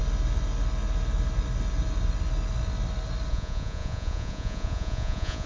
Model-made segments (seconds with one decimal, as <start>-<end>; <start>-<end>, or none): 3.3-5.5